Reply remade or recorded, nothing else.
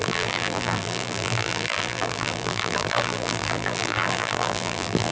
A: remade